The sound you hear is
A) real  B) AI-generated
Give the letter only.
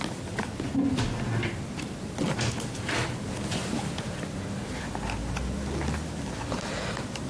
A